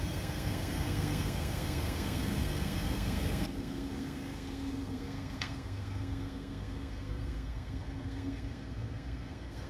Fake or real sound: fake